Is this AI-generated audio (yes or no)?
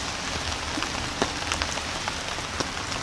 no